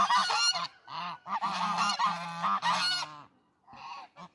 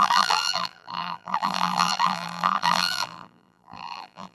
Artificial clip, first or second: second